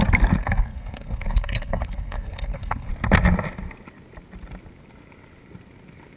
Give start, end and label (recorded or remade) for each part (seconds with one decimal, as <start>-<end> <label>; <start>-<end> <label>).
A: 0.0-0.4 recorded; 0.4-2.9 remade; 2.9-6.2 recorded